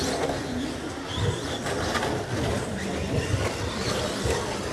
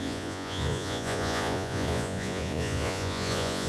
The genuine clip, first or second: first